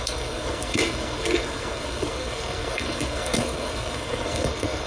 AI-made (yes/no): yes